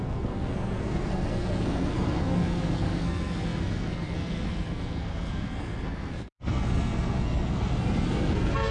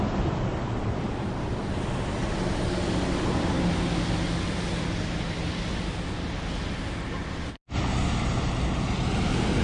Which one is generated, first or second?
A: first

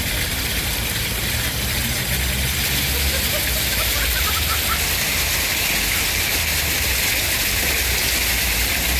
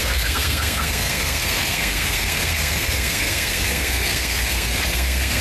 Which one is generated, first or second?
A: second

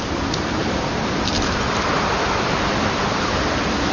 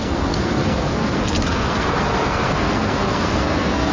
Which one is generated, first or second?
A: second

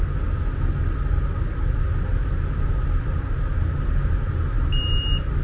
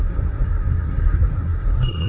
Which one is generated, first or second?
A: second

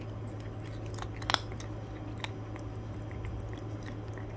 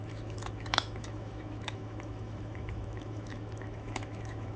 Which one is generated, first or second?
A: second